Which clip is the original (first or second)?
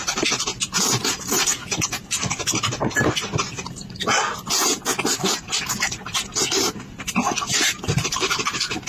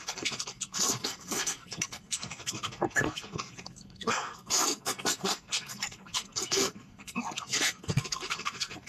first